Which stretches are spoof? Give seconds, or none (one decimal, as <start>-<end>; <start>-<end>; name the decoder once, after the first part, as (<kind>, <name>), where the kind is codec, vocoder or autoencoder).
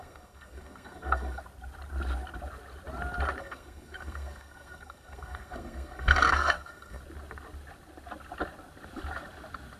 0.0-1.4 (codec, SNAC); 3.4-7.0